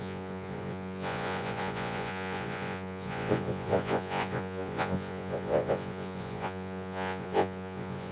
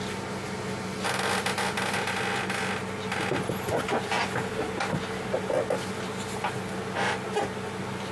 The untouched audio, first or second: second